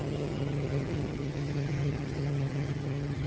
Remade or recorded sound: remade